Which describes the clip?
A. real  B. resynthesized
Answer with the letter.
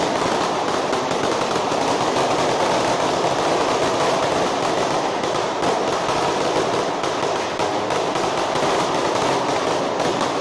A